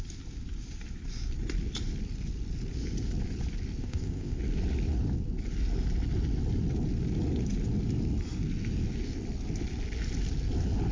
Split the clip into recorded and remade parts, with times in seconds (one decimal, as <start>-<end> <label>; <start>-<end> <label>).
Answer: 0.0-3.8 recorded; 3.8-4.4 remade; 4.4-10.9 recorded